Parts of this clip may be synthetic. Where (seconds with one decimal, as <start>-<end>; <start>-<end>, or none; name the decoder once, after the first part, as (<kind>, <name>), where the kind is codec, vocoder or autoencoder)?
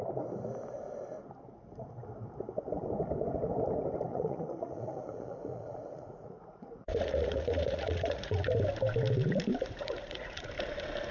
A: 4.1-8.5 (vocoder, Vocos); 9.5-10.5